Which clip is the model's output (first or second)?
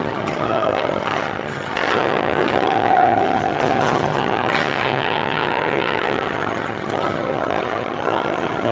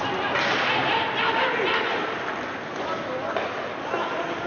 first